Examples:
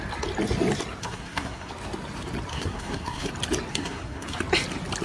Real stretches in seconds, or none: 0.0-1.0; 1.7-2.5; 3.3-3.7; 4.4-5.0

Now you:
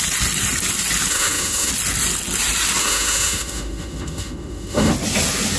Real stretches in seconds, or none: 0.0-1.1; 1.7-2.8; 4.9-5.6

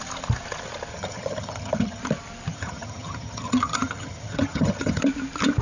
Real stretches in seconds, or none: 0.0-0.9; 2.0-2.5; 5.0-5.6

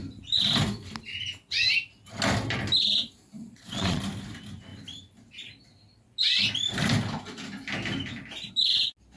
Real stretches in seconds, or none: 0.0-3.4; 4.0-9.2

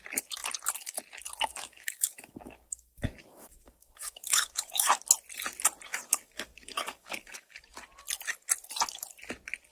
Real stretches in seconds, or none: 0.0-1.5; 4.9-5.9; 7.6-9.7

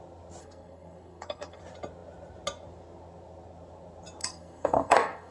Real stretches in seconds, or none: 0.0-0.4; 1.6-4.2